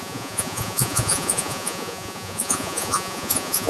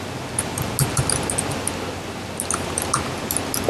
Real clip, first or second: second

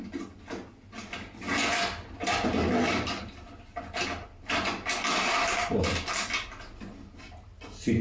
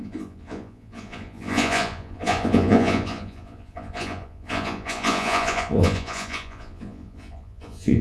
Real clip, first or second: first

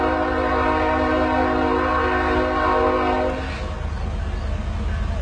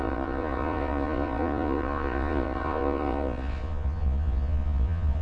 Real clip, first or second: first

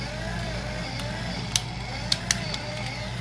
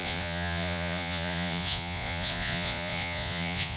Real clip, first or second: first